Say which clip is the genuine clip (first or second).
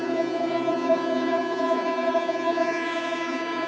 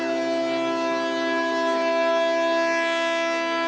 second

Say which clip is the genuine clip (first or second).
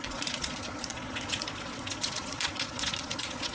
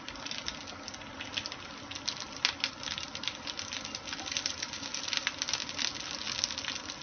second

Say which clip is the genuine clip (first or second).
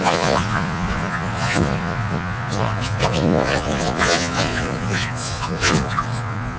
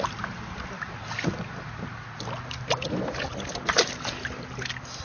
second